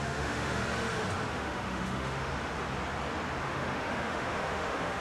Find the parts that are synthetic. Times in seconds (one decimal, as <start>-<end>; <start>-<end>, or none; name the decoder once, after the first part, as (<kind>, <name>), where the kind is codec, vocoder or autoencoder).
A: 0.0-0.6 (autoencoder, DAC-VAE); 1.3-2.3; 3.4-5.0